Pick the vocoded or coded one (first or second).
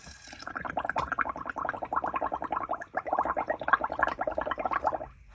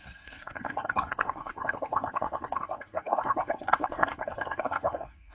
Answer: second